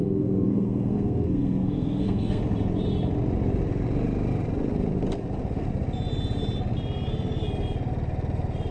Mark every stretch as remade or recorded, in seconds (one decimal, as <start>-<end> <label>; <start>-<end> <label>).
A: 0.0-2.4 remade; 2.4-8.7 recorded